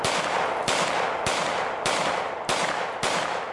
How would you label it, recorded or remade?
recorded